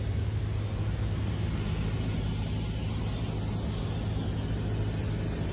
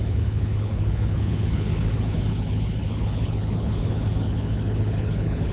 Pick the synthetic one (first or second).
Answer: second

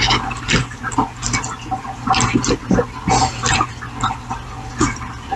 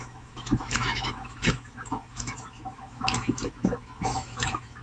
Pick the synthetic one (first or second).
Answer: second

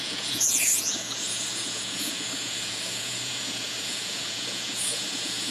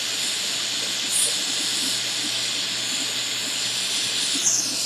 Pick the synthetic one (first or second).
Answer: first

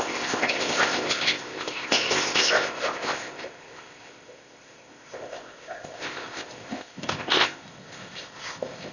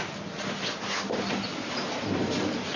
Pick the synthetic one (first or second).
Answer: first